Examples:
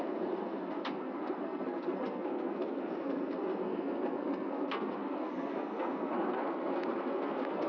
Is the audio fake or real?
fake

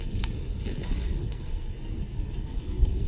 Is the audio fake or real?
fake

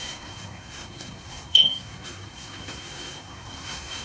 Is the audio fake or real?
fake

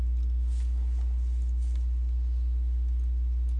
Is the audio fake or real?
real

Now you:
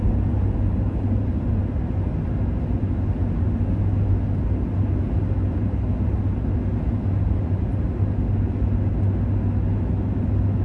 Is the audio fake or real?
real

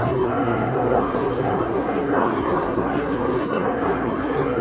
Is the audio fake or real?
fake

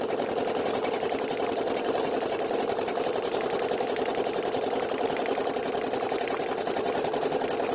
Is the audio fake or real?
real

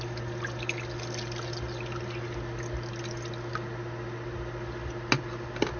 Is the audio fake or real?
real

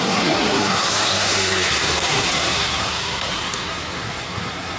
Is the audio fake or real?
fake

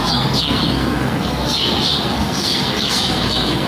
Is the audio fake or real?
fake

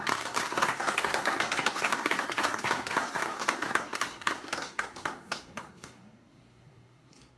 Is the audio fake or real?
fake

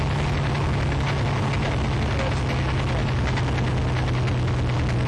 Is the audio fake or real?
real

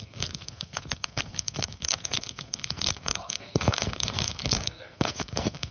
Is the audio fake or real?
fake